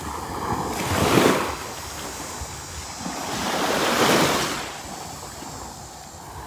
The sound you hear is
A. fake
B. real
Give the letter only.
B